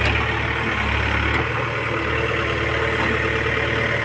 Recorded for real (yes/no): yes